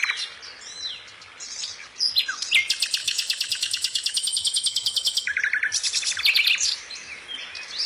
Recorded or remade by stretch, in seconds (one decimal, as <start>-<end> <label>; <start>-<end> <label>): 0.0-3.0 recorded; 3.0-5.4 remade; 5.4-7.9 recorded